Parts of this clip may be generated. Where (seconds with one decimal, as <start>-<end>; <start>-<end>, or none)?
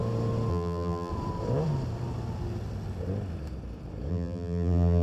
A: 0.5-1.1; 4.1-5.0